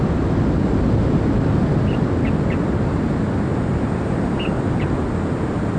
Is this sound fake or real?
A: real